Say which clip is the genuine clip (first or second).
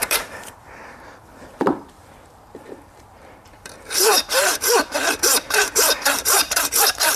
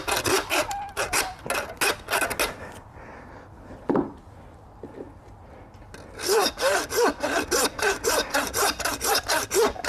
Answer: second